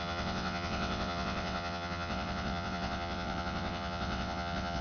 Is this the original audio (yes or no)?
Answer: no